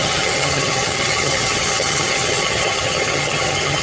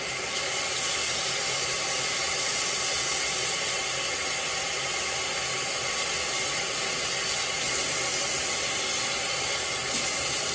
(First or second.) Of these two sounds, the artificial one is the first